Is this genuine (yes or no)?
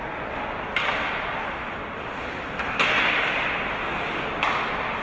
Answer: yes